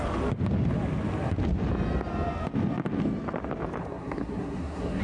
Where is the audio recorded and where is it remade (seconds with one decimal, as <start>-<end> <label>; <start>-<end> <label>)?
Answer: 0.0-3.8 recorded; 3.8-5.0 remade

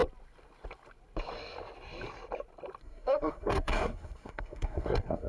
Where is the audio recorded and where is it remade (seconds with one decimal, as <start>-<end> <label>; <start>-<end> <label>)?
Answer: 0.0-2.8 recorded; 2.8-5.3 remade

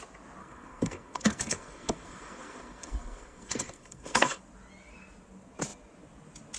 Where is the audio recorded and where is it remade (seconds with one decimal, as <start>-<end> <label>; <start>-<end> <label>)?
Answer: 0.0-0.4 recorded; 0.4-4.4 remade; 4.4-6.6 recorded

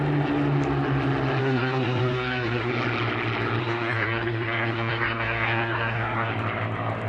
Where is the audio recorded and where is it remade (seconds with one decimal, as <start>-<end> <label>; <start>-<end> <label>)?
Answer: 0.0-1.4 recorded; 1.4-2.7 remade; 2.7-3.6 recorded; 3.6-6.3 remade; 6.3-7.1 recorded

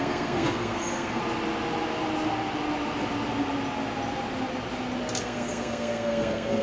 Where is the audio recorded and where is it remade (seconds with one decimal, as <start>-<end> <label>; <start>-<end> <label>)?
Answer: 0.0-1.2 remade; 1.2-5.2 recorded; 5.2-6.6 remade

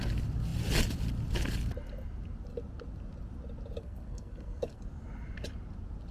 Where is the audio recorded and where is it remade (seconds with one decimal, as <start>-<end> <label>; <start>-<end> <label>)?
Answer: 0.0-3.8 recorded; 3.8-4.8 remade; 4.8-6.1 recorded

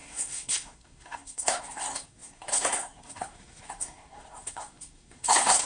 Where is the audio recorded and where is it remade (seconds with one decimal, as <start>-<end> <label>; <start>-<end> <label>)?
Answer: 0.0-5.7 remade